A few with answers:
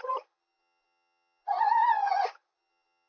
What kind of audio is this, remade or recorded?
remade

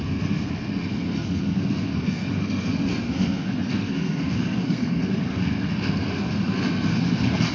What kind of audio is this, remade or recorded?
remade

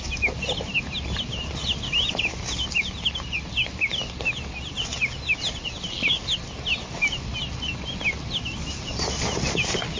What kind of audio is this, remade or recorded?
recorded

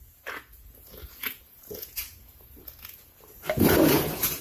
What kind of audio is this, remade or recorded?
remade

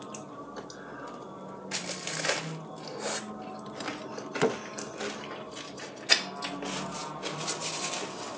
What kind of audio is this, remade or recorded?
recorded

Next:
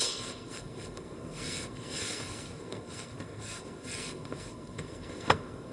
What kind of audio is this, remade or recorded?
remade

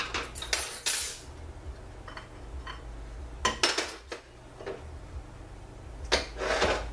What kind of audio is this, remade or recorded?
recorded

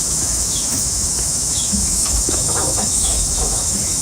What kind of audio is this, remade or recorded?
remade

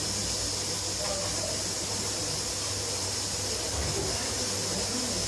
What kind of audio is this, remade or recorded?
recorded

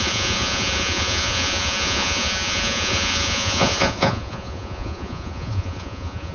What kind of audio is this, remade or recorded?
remade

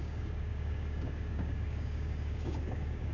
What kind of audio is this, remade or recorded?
remade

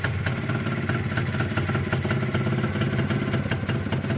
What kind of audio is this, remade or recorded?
recorded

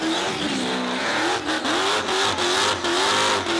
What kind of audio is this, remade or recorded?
recorded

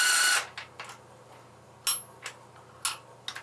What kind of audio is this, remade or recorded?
recorded